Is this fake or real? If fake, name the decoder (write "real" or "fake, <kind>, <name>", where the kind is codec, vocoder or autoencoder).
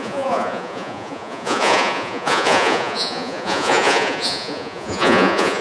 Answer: fake, vocoder, Vocos